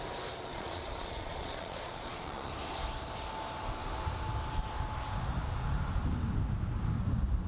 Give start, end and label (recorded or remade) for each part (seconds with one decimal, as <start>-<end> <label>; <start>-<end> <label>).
0.0-0.5 recorded; 0.5-2.5 remade; 2.5-7.5 recorded